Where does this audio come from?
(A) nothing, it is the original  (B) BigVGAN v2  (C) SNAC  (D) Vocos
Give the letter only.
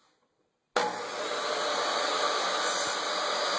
A